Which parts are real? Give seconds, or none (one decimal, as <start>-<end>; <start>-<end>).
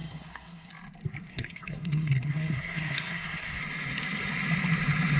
0.7-1.3; 3.6-5.2